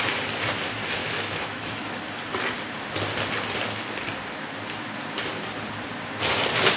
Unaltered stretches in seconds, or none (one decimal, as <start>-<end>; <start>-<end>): 0.0-1.0; 2.0-6.8